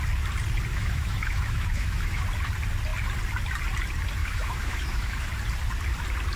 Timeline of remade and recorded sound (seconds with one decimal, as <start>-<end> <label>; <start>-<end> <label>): 0.0-0.7 recorded; 0.7-2.2 remade; 2.2-4.2 recorded; 4.2-5.3 remade; 5.3-6.4 recorded